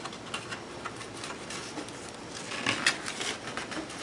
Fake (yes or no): no